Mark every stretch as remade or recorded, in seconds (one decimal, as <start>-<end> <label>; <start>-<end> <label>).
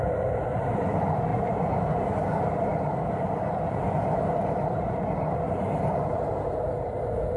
0.0-1.3 remade; 1.3-2.0 recorded; 2.0-7.4 remade